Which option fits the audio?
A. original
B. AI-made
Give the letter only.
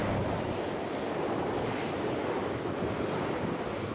A